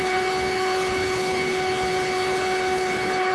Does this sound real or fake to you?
fake